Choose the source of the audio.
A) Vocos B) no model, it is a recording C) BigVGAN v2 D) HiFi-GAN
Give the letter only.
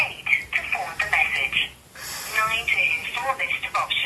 B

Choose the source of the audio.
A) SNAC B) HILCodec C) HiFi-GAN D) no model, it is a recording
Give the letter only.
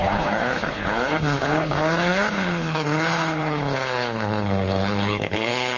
B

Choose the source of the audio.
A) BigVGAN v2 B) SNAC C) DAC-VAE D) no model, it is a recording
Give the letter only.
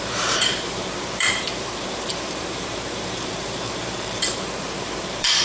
A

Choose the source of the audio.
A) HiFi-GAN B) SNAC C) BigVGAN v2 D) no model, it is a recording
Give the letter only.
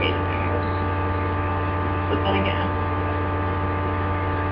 D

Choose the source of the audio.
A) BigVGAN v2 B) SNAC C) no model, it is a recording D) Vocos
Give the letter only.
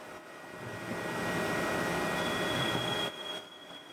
C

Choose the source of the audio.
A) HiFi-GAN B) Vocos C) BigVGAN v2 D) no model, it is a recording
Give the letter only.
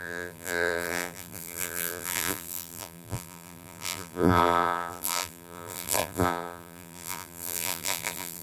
C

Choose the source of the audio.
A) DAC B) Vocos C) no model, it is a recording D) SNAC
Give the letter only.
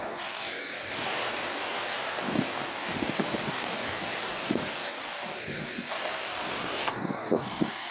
A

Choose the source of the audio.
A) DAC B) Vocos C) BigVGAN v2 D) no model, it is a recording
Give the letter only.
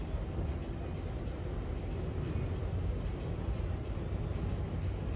D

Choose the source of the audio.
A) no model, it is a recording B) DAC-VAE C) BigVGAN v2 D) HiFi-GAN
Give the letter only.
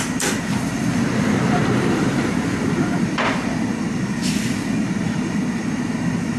C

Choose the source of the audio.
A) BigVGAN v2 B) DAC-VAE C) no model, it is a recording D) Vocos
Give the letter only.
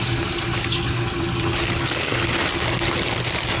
C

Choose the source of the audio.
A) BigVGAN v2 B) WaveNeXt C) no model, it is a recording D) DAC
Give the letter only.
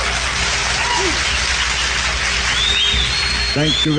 C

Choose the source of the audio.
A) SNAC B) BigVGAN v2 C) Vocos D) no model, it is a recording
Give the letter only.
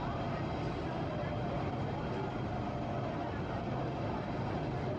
D